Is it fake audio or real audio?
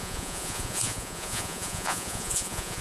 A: fake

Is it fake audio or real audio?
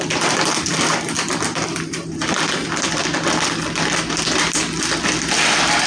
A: fake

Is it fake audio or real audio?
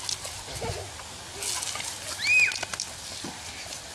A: real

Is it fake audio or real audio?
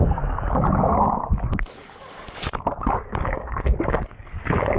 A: fake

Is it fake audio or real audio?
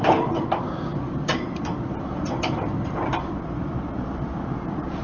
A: fake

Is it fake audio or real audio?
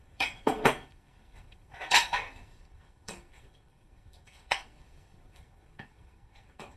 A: fake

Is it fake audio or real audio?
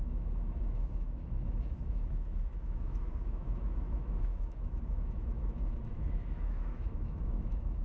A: fake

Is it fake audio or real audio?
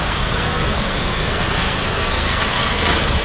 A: fake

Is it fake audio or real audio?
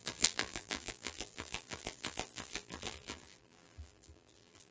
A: fake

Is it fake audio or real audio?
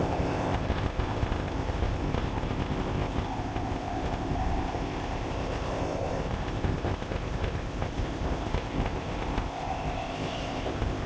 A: fake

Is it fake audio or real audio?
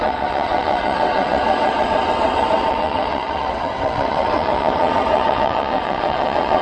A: fake